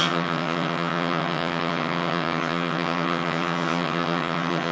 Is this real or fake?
fake